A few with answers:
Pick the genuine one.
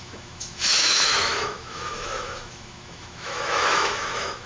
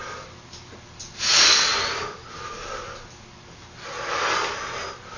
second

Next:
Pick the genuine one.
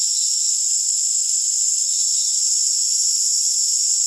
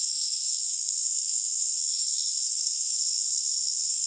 first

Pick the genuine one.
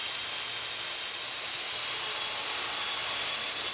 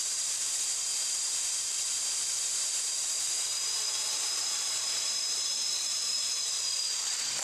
first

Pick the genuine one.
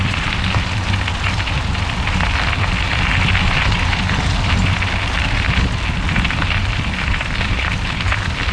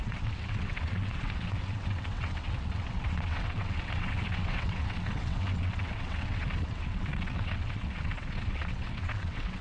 first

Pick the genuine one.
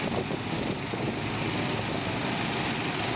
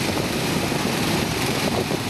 first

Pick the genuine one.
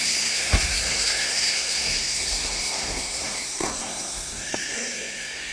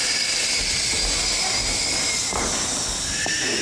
second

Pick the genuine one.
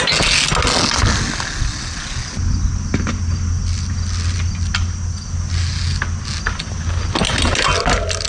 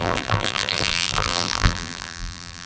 first